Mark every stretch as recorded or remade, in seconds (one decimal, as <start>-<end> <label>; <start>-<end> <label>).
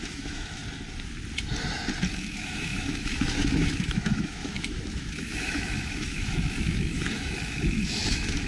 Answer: 0.0-0.6 remade; 0.6-2.1 recorded; 2.1-8.5 remade